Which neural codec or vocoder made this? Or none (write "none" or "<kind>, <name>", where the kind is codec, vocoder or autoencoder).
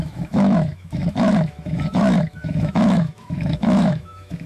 autoencoder, DAC-VAE